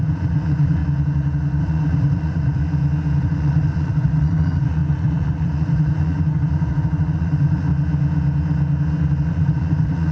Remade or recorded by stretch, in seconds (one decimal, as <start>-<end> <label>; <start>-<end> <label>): 0.0-0.8 remade; 0.8-1.6 recorded; 1.6-2.6 remade; 2.6-3.2 recorded; 3.2-7.7 remade; 7.7-9.3 recorded; 9.3-10.1 remade